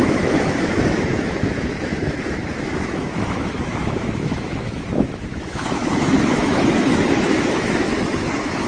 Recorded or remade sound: remade